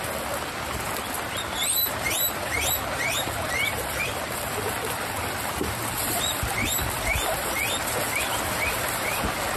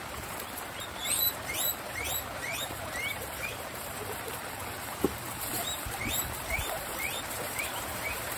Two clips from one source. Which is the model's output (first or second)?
second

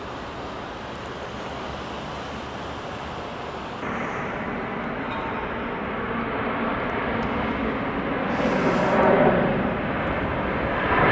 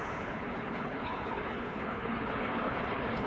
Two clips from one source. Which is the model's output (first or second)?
second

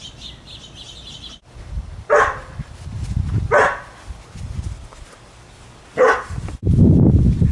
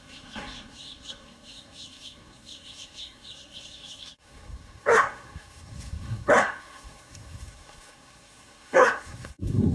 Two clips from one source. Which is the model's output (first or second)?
second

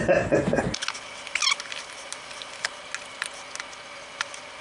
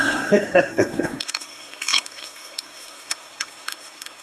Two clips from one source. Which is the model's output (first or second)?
second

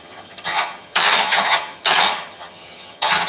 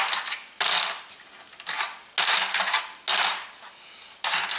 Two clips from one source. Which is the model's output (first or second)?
first